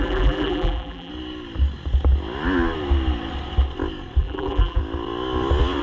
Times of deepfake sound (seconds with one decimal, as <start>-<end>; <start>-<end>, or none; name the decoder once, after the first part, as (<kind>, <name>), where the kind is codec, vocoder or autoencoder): 0.0-1.1 (vocoder, BigVGAN v2); 4.2-4.8